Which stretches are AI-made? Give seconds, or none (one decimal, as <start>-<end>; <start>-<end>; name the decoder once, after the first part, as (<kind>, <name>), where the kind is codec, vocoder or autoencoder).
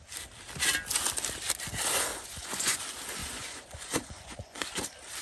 2.1-2.8 (vocoder, Vocos); 3.2-4.8